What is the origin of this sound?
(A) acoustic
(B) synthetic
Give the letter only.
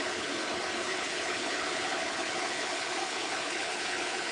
B